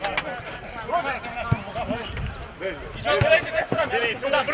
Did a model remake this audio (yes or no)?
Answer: no